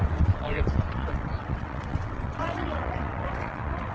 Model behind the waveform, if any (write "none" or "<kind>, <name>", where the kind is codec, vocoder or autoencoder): vocoder, WaveNeXt